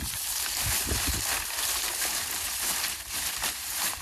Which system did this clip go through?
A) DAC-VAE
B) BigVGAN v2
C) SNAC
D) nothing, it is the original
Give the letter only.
D